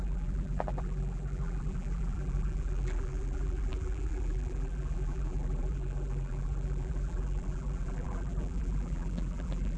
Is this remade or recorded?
remade